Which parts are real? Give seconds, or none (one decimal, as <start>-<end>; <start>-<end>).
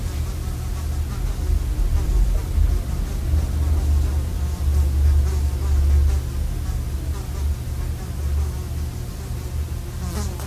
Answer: 0.0-10.5